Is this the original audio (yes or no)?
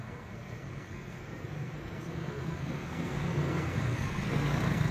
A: no